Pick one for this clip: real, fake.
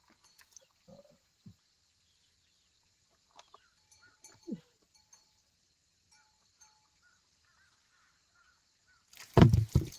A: real